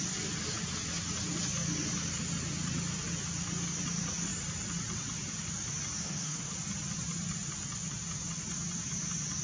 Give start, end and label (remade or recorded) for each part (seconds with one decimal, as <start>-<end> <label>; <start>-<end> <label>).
0.0-6.0 recorded; 6.0-6.5 remade; 6.5-9.4 recorded